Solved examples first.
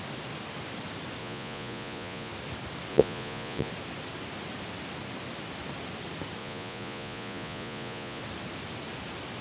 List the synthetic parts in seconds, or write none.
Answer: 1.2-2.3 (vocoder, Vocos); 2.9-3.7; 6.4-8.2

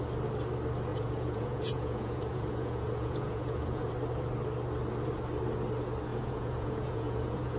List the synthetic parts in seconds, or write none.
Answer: 0.9-3.9 (vocoder, Vocos); 6.1-7.6

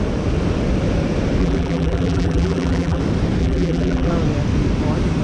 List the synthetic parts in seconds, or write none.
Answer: 1.4-3.0 (vocoder, BigVGAN v2); 3.4-4.1